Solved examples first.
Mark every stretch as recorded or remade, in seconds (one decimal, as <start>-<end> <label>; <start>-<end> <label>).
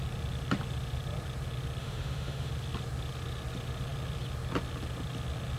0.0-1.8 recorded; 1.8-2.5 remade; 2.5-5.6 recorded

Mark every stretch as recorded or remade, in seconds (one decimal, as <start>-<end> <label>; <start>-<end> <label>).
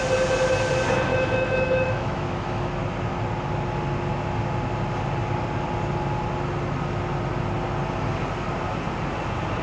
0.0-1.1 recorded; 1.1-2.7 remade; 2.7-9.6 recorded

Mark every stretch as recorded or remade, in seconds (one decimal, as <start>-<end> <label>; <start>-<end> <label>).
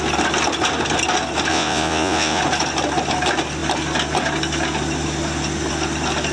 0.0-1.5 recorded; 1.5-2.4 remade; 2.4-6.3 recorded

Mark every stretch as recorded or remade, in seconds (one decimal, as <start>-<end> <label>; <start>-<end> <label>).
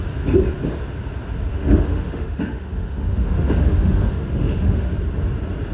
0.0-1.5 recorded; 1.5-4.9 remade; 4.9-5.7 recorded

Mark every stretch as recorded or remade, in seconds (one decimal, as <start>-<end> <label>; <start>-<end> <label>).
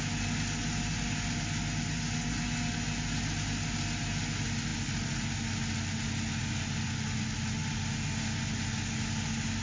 0.0-9.6 recorded